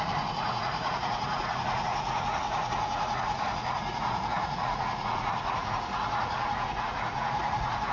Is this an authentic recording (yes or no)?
no